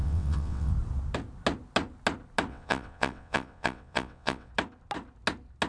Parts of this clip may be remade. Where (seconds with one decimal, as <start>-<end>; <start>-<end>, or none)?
0.0-0.7; 2.5-4.5